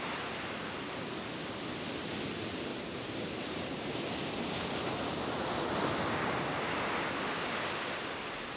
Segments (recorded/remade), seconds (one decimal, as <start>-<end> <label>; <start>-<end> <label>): 0.0-2.7 recorded; 2.7-3.8 remade; 3.8-8.6 recorded